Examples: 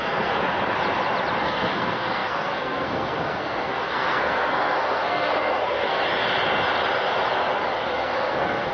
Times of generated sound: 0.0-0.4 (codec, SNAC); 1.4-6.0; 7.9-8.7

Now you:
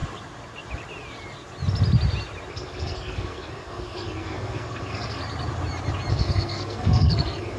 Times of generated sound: 2.5-5.2 (codec, SNAC); 6.1-7.6

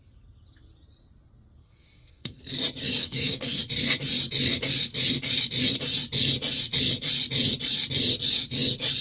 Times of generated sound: 1.6-2.4 (codec, SNAC); 3.0-3.6

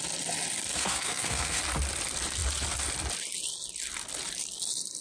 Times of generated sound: 0.7-1.6 (codec, SNAC)